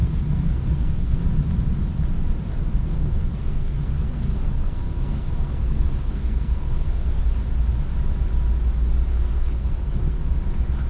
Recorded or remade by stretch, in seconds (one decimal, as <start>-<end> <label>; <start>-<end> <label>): 0.0-1.2 remade; 1.2-2.8 recorded; 2.8-7.2 remade; 7.2-9.1 recorded; 9.1-10.3 remade; 10.3-10.9 recorded